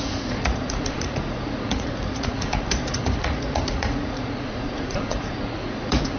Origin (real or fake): fake